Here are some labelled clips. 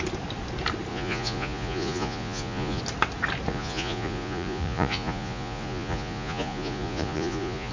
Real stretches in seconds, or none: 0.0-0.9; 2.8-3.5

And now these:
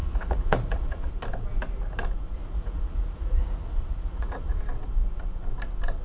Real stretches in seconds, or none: 1.1-2.4; 4.6-6.0

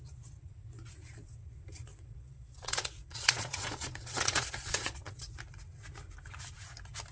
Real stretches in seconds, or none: 0.0-1.9; 5.4-7.1